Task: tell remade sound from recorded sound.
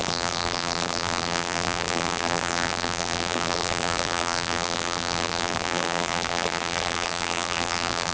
remade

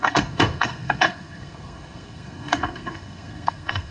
remade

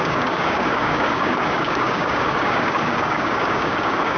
remade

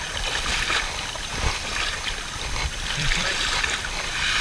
remade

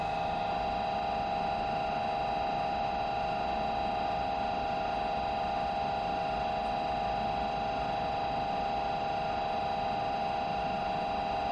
recorded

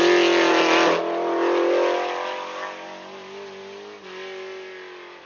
recorded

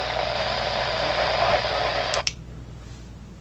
remade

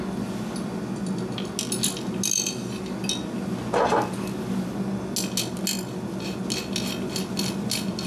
recorded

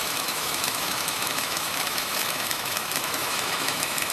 remade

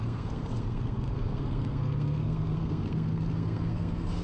remade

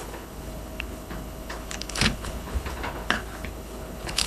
remade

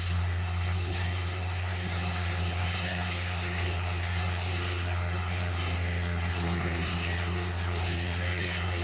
remade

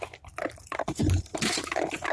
recorded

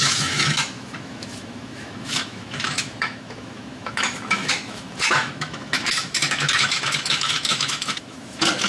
remade